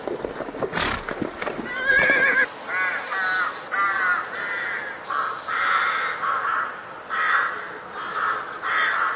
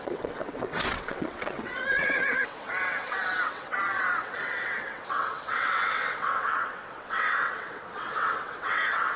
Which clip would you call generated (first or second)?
second